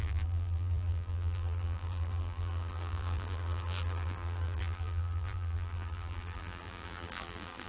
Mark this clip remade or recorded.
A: remade